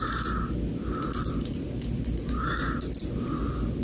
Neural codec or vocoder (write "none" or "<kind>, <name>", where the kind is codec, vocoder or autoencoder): none